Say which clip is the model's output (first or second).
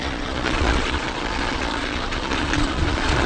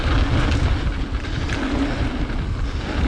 first